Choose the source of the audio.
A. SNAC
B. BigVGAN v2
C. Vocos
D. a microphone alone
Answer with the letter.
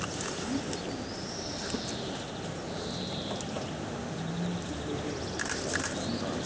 D